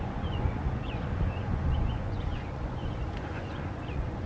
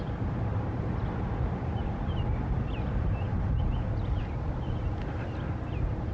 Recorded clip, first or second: second